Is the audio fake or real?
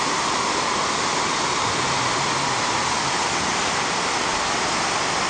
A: real